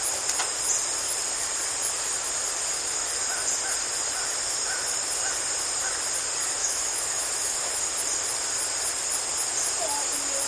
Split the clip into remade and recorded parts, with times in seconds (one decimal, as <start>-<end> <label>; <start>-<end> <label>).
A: 0.0-6.6 recorded; 6.6-7.8 remade; 7.8-10.5 recorded